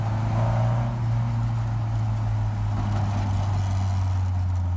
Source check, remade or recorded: recorded